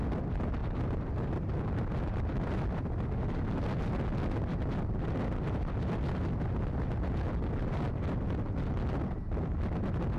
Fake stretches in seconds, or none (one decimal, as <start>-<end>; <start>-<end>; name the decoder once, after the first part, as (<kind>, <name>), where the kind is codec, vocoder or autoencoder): none